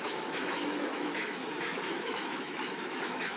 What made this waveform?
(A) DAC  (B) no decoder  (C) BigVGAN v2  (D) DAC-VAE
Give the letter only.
D